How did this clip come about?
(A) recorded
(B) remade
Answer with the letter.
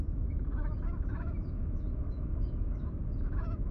B